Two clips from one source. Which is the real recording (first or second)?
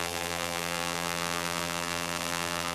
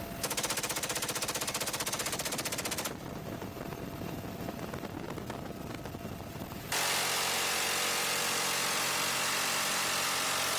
second